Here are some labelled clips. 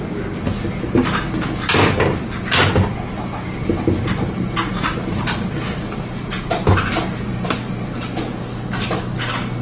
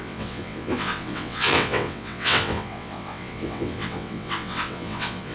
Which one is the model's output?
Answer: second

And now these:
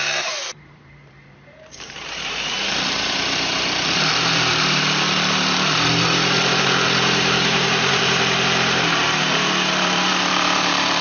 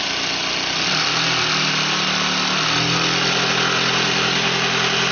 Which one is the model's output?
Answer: first